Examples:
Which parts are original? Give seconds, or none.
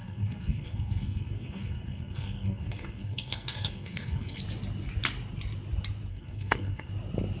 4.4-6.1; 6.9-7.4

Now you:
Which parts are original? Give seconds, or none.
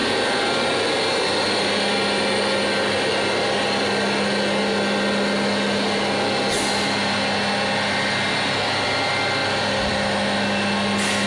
0.0-11.3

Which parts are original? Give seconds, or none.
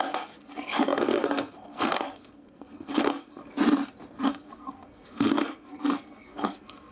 3.4-4.2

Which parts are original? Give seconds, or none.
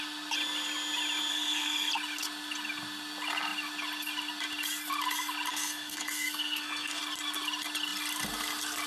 0.0-1.3; 1.9-5.5; 7.0-8.9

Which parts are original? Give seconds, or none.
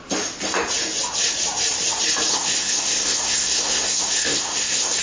0.0-2.3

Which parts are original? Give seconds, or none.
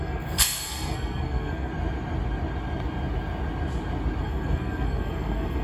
1.7-4.2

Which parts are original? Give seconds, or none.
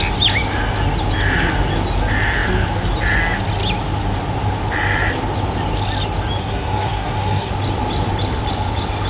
0.0-6.4; 7.5-9.1